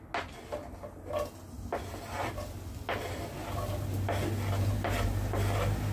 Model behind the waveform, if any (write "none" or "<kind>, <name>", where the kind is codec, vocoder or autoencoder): none